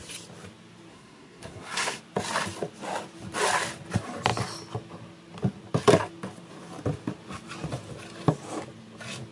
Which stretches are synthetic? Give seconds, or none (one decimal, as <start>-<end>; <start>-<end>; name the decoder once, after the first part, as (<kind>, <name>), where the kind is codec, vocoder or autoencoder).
0.9-2.0 (codec, SNAC)